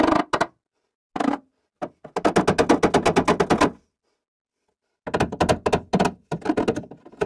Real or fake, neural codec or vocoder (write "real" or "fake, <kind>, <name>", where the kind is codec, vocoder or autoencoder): real